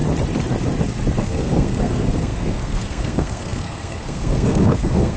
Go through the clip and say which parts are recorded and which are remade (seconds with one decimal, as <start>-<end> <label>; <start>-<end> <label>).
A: 0.0-1.2 recorded; 1.2-5.2 remade